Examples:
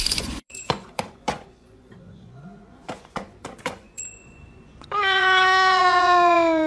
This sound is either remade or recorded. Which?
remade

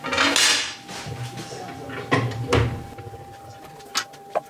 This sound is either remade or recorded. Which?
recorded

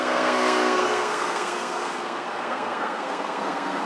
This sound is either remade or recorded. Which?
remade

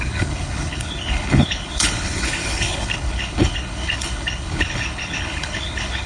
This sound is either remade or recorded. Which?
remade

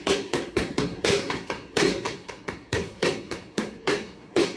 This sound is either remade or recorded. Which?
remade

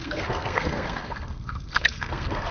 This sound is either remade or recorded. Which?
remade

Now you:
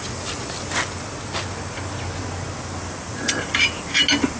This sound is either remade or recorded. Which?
recorded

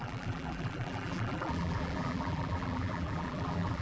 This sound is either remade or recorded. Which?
remade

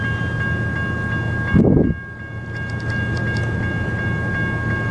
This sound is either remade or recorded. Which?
recorded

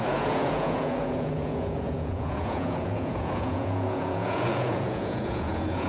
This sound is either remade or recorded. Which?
remade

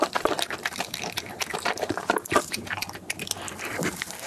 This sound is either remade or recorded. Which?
remade